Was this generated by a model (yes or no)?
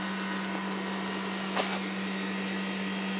no